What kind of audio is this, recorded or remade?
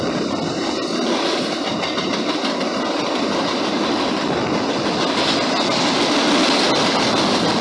recorded